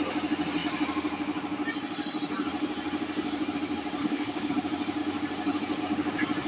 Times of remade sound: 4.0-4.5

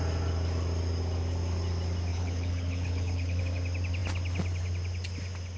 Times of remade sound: 2.1-3.4

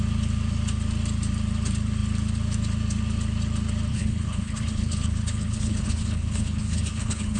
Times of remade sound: 3.9-7.4

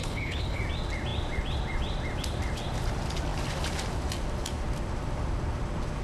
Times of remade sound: 0.0-0.6

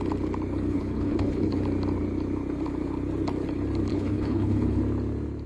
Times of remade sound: 0.7-1.6; 3.9-4.8

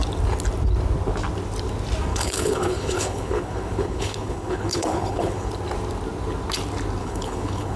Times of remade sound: 2.1-5.5; 7.0-7.8